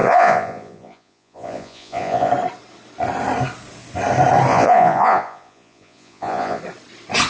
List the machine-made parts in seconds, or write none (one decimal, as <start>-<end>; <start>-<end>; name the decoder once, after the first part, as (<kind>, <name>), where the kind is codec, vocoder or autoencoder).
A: 0.0-2.3 (vocoder, Vocos); 4.5-6.6